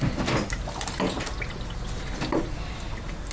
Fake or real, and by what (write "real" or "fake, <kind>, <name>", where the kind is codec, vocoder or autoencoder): real